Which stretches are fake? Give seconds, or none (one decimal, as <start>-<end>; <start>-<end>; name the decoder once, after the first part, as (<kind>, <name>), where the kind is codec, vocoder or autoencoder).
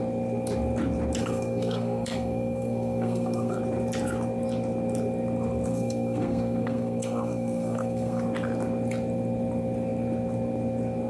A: 1.2-3.6 (codec, SNAC); 5.7-8.2